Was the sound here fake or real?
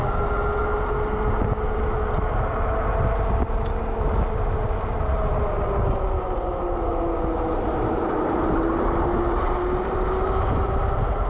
real